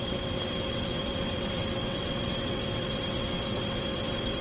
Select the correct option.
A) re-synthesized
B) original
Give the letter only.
A